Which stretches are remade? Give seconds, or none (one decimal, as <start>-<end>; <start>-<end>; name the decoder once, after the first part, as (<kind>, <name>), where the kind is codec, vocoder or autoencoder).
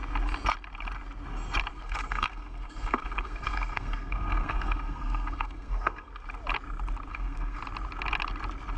1.7-6.1 (codec, SNAC); 7.1-7.6